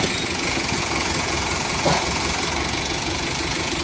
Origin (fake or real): fake